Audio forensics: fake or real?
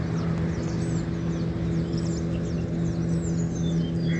real